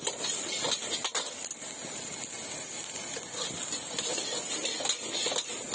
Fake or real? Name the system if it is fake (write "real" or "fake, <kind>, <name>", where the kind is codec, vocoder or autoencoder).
real